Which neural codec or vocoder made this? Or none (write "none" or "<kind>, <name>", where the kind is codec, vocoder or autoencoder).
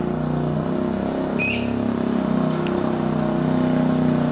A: none